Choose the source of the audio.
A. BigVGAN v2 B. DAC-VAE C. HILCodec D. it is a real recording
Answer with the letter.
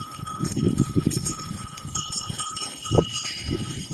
C